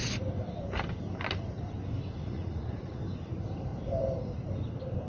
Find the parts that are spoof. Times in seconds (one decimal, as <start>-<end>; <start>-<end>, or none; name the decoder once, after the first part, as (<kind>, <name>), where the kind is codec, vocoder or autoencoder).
2.2-3.0 (vocoder, Vocos)